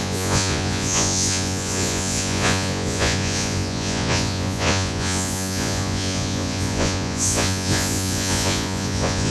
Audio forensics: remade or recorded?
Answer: remade